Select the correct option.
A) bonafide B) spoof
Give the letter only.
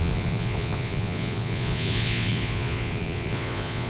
B